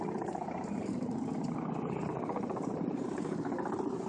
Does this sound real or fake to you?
fake